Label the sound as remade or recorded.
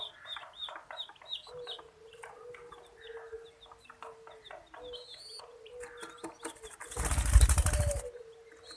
recorded